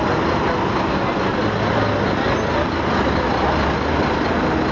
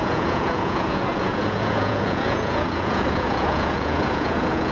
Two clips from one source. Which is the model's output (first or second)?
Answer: second